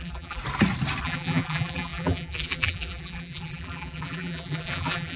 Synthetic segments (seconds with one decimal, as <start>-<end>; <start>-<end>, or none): 0.0-0.4; 1.0-5.2